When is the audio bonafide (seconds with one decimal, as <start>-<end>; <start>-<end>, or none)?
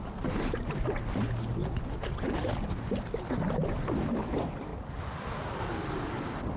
0.0-1.6; 2.7-6.6